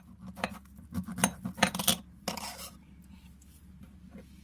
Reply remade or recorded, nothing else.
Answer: recorded